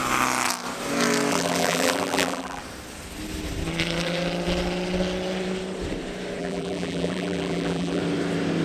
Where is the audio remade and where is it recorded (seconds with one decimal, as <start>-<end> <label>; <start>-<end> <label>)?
0.0-1.3 recorded; 1.3-2.6 remade; 2.6-6.4 recorded; 6.4-8.0 remade; 8.0-8.6 recorded